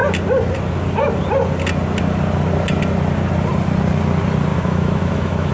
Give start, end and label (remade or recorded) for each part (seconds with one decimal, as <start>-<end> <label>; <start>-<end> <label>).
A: 0.0-4.5 recorded; 4.5-5.5 remade